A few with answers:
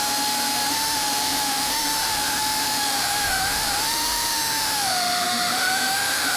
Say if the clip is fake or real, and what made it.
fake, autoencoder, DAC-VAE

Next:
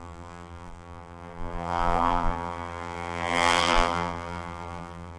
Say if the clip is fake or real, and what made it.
fake, vocoder, BigVGAN v2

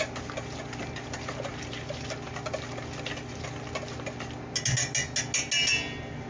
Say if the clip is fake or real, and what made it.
real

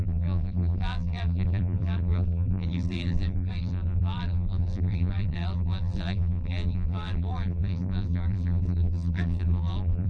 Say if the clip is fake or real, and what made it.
fake, vocoder, BigVGAN v2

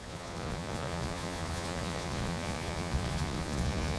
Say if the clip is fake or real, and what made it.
fake, vocoder, Vocos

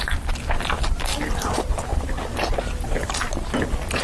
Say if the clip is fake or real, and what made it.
real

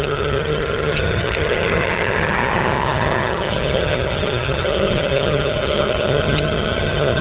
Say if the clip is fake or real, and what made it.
fake, vocoder, HiFi-GAN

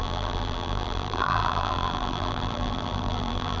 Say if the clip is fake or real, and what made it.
fake, vocoder, BigVGAN v2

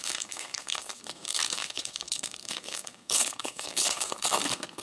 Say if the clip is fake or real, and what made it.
fake, codec, SNAC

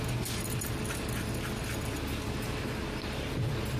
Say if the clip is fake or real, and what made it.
real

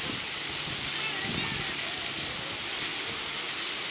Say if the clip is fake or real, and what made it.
real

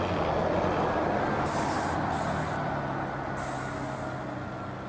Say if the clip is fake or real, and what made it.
real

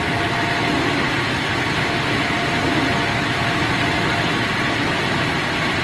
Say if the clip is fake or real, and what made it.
real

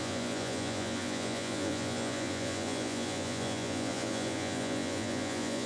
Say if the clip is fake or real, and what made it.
fake, vocoder, Vocos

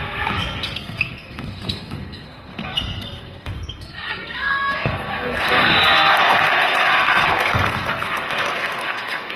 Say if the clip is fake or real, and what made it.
fake, codec, SNAC